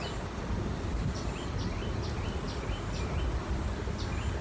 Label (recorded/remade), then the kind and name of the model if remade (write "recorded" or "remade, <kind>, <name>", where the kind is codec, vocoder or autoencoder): recorded